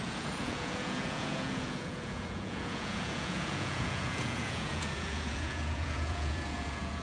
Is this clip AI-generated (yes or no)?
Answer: yes